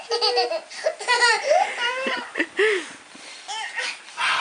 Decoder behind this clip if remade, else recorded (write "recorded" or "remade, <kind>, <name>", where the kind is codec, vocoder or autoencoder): recorded